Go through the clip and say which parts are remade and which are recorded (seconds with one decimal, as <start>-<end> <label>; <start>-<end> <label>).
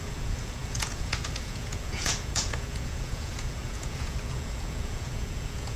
0.0-5.8 remade